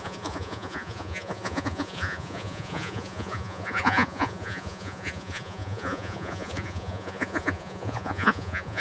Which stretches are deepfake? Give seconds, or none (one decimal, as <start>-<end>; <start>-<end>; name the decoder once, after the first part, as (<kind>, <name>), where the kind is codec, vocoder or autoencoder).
0.0-8.8 (vocoder, Vocos)